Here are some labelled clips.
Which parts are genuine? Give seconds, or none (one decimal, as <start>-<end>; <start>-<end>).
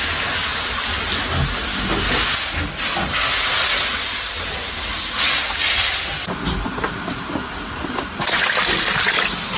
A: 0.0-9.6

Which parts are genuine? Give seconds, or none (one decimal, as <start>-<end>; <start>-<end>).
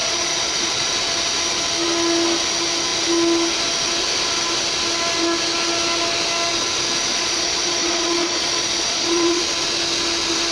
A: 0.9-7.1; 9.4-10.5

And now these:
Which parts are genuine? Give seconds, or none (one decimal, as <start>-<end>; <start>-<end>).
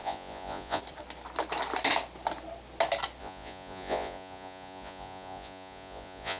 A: 0.8-3.2